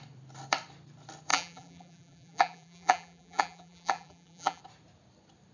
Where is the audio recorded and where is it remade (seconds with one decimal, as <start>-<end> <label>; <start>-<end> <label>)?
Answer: 0.0-1.3 recorded; 1.3-4.6 remade; 4.6-5.5 recorded

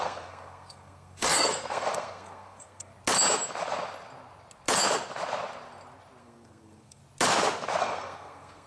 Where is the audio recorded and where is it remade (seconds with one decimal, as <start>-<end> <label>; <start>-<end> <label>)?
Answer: 0.0-2.9 remade; 2.9-6.2 recorded; 6.2-7.0 remade; 7.0-7.8 recorded; 7.8-8.7 remade

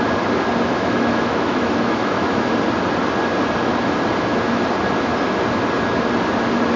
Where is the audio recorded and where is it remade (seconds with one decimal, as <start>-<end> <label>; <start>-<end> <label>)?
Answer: 0.0-0.7 recorded; 0.7-2.5 remade; 2.5-6.8 recorded